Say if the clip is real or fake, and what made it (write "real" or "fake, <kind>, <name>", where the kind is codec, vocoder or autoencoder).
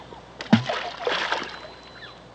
real